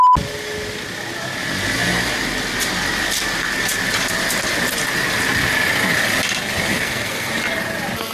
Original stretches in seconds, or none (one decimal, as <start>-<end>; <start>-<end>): 0.0-6.7; 7.3-8.1